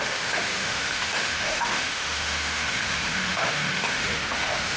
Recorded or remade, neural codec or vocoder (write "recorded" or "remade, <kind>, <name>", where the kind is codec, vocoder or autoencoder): remade, autoencoder, DAC-VAE